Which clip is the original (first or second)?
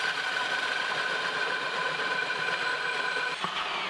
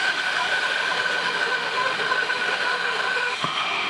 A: first